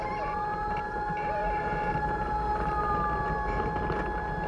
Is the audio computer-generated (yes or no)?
no